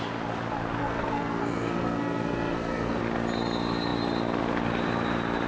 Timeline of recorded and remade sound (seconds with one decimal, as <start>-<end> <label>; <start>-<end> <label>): 0.0-0.8 recorded; 0.8-3.0 remade; 3.0-5.5 recorded